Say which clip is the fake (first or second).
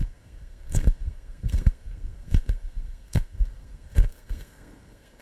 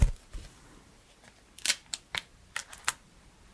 first